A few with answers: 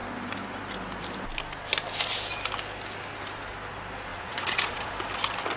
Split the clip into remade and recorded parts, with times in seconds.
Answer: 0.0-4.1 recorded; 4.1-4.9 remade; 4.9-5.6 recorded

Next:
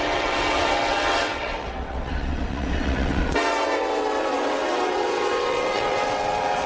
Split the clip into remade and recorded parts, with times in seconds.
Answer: 0.0-6.7 remade

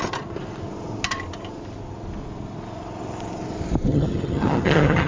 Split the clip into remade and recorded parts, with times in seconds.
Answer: 0.0-3.9 recorded; 3.9-5.1 remade